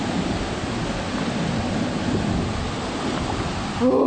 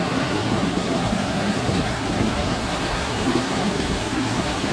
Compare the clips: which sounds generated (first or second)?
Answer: second